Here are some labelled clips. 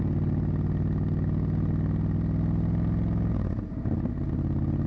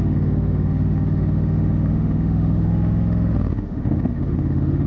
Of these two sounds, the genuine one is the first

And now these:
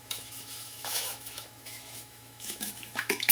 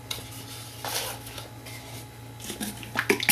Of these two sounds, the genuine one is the second